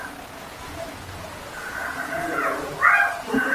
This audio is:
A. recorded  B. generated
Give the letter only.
B